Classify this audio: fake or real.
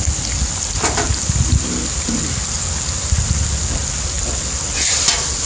real